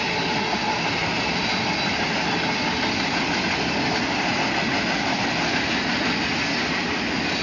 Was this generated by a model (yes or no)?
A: no